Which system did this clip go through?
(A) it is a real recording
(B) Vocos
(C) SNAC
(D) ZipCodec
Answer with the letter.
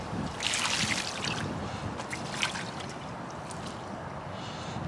A